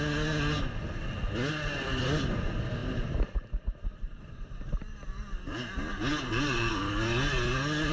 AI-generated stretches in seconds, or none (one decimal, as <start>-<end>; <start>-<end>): 2.8-4.8; 6.1-6.7